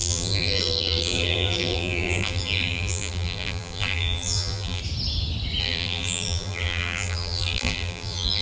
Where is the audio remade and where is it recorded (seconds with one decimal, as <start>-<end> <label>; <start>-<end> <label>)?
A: 0.0-4.8 remade; 4.8-5.6 recorded; 5.6-8.4 remade